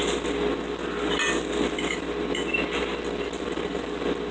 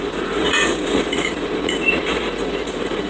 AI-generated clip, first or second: second